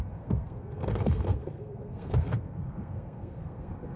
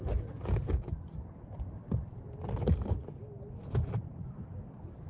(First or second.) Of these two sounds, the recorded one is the second